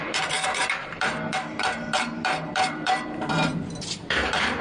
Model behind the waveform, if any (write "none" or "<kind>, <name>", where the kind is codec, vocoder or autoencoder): vocoder, BigVGAN v2